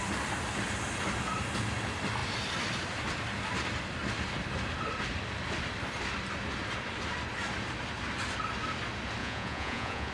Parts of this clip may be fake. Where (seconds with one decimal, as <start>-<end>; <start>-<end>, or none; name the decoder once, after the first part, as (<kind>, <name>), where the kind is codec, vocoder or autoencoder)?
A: 9.2-10.1 (vocoder, Vocos)